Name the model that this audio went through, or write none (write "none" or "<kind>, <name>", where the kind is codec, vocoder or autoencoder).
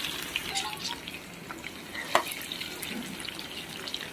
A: none